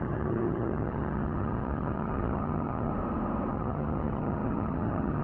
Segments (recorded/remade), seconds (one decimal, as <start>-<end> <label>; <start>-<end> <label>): 0.0-2.9 remade; 2.9-3.5 recorded; 3.5-5.2 remade